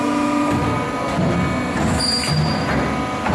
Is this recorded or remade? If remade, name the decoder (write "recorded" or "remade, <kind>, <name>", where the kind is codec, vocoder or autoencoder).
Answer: recorded